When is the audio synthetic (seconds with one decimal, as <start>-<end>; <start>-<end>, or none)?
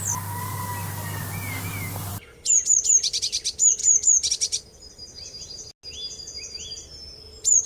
2.1-3.2; 3.8-4.3